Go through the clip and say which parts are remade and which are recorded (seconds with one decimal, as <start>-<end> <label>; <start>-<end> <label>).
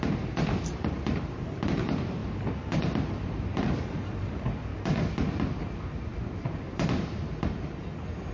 0.0-2.2 remade; 2.2-2.7 recorded; 2.7-4.7 remade; 4.7-5.6 recorded; 5.6-8.3 remade